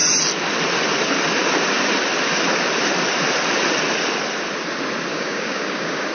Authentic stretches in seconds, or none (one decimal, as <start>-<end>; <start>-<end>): 0.0-5.1

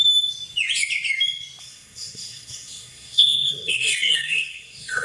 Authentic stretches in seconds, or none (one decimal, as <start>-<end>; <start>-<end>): 0.0-1.6

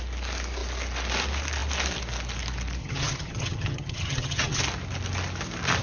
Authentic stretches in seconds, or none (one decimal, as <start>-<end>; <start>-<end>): 0.0-2.8; 4.6-5.8

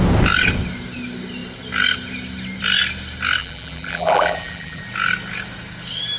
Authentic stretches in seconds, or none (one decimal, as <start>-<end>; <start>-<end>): 0.0-3.4; 4.8-6.2

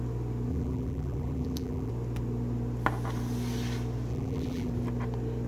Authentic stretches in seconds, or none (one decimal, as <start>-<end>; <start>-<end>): 0.0-0.5; 1.9-4.1; 4.7-5.5

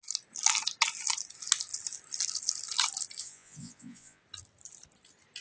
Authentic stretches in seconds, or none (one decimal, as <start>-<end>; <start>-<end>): 0.0-3.2; 4.2-5.4

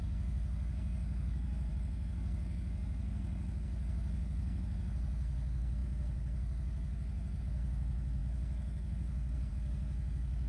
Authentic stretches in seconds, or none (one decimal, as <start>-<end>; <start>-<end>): none